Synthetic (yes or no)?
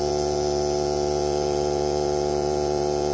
yes